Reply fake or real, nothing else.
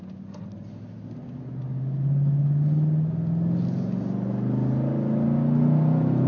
real